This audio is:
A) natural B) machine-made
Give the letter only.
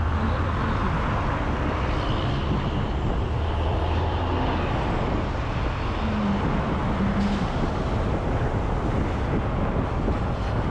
A